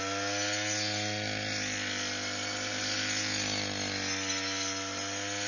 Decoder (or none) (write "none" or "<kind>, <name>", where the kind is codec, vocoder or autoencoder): none